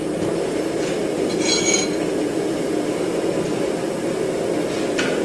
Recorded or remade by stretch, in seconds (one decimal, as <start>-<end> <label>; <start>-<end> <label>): 0.0-5.2 recorded

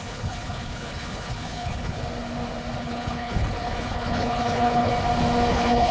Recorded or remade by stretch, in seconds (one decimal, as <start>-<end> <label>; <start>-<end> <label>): 0.0-2.0 remade; 2.0-2.8 recorded; 2.8-4.9 remade; 4.9-5.5 recorded; 5.5-5.9 remade